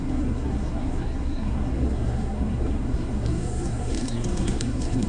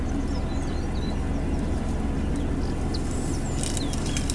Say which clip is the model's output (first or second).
first